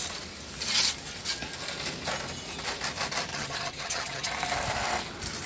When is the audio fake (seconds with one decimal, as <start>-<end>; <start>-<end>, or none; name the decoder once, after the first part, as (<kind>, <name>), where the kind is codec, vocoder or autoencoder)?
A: 3.3-4.3 (vocoder, HiFi-GAN)